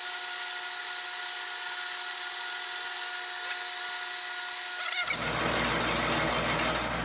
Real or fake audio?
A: real